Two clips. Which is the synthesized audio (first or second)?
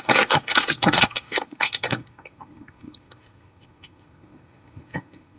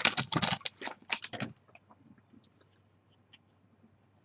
first